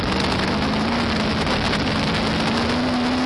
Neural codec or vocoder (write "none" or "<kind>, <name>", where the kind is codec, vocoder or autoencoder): none